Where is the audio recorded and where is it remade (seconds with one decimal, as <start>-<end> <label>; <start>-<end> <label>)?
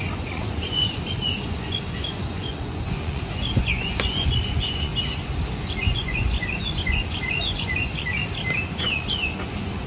0.0-4.9 remade; 4.9-5.5 recorded; 5.5-8.2 remade; 8.2-8.7 recorded; 8.7-9.9 remade